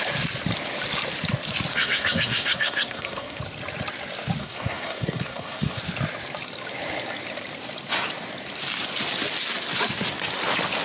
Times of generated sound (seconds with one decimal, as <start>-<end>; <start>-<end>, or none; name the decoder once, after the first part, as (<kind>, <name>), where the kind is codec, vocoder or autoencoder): 1.7-3.4 (codec, SNAC); 4.4-5.8